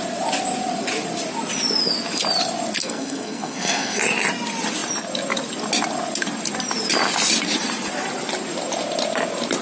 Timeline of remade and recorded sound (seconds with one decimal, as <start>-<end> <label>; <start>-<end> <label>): 0.0-2.8 recorded; 2.8-4.0 remade; 4.0-9.6 recorded